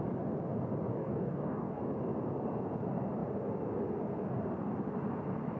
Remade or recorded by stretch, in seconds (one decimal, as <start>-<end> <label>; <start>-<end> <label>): 0.0-0.9 recorded; 0.9-1.8 remade; 1.8-5.6 recorded